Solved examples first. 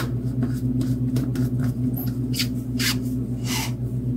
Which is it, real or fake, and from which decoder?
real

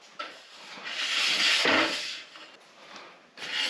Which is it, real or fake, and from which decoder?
real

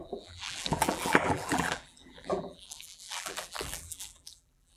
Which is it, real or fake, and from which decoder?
fake, vocoder, BigVGAN v2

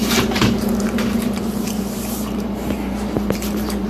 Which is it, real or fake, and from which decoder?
fake, vocoder, BigVGAN v2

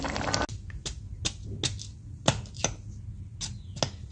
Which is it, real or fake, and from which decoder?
real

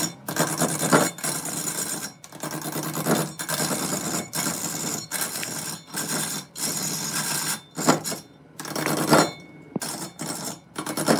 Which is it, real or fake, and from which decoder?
real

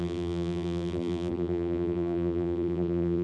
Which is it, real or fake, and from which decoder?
fake, vocoder, BigVGAN v2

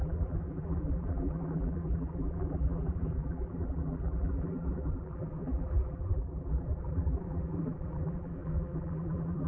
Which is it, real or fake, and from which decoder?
fake, vocoder, BigVGAN v2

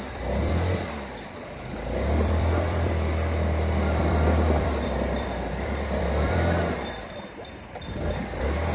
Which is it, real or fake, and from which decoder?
fake, vocoder, BigVGAN v2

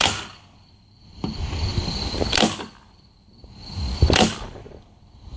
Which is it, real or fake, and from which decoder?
fake, vocoder, BigVGAN v2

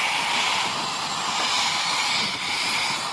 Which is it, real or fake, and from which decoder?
fake, vocoder, BigVGAN v2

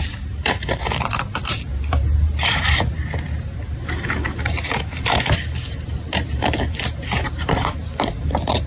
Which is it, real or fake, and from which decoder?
fake, vocoder, BigVGAN v2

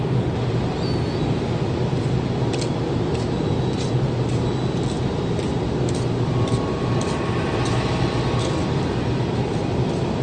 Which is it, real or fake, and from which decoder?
real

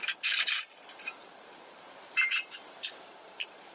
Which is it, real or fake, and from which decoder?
fake, vocoder, BigVGAN v2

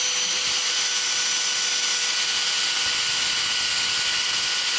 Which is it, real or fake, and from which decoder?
real